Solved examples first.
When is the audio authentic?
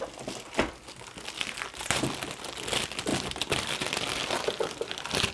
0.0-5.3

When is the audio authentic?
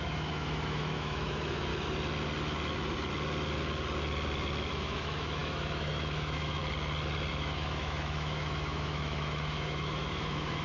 1.7-4.7; 6.6-7.3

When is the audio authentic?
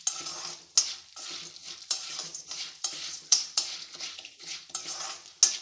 0.0-1.6; 5.0-5.6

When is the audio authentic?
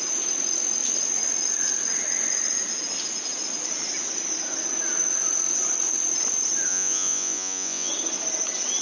0.0-6.7; 7.9-8.8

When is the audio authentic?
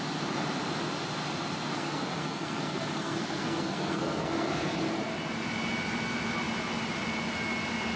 0.0-1.7; 4.8-8.0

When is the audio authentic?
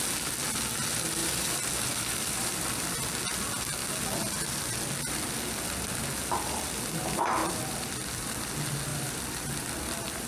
0.0-1.2; 2.7-7.4; 8.5-8.9